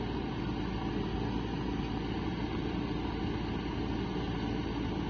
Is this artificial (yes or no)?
no